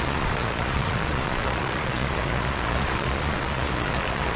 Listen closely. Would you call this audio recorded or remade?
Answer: remade